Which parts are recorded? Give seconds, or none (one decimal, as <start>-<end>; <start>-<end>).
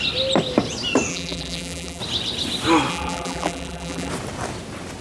0.0-1.1; 2.0-2.9; 4.1-5.0